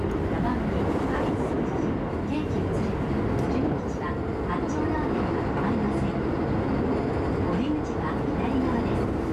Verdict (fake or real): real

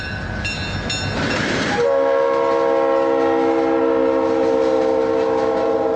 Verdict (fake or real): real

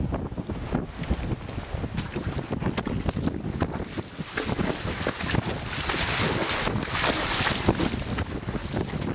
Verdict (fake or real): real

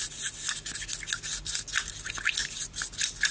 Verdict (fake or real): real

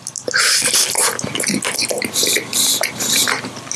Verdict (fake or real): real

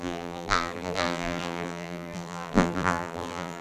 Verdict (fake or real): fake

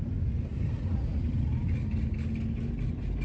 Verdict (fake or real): real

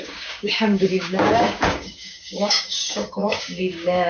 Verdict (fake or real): fake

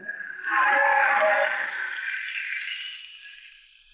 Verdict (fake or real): real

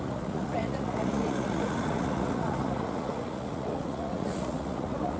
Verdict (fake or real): fake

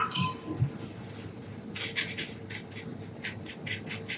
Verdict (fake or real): real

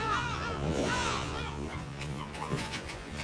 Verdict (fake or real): fake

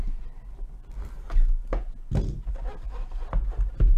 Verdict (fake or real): real